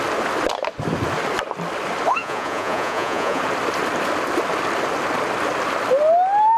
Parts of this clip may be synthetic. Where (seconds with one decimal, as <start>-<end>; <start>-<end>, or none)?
2.2-3.4